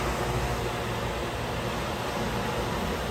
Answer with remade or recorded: recorded